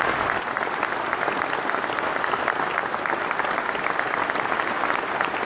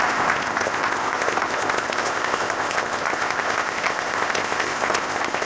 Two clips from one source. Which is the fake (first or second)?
second